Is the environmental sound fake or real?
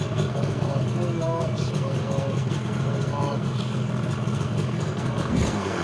fake